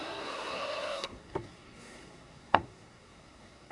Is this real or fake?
fake